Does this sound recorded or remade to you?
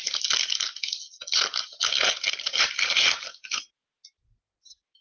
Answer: recorded